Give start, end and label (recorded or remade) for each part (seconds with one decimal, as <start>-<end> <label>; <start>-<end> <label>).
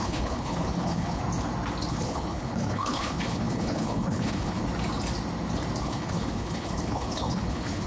0.0-1.2 remade; 1.2-1.9 recorded; 1.9-4.6 remade; 4.6-5.8 recorded; 5.8-7.9 remade